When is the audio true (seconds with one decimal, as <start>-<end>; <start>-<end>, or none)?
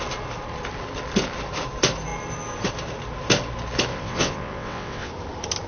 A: 0.0-3.9; 5.1-5.7